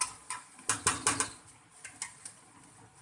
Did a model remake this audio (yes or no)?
no